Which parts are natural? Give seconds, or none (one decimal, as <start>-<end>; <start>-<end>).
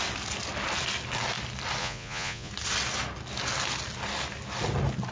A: 0.0-1.8; 2.5-5.1